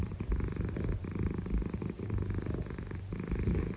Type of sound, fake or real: fake